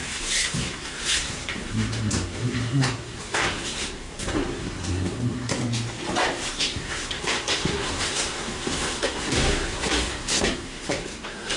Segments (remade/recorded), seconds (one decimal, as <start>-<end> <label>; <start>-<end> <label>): 0.0-5.6 remade; 5.6-6.5 recorded; 6.5-11.6 remade